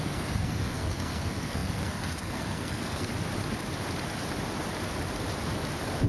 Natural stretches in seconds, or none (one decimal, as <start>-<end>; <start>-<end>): 3.1-6.1